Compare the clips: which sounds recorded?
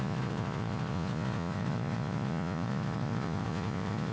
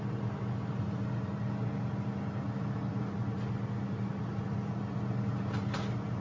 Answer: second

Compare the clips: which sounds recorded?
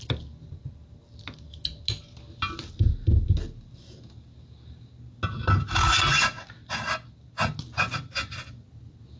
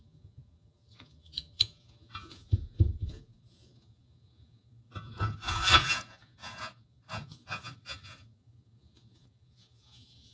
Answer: first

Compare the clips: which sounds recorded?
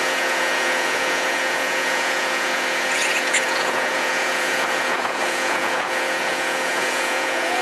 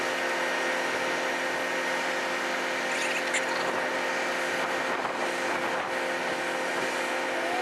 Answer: second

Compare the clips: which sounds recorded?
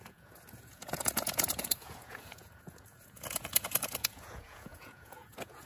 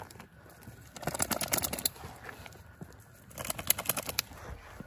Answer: second